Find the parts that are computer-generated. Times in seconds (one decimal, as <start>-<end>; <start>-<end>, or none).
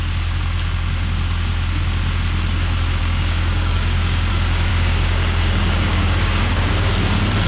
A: 3.0-4.3; 4.7-6.7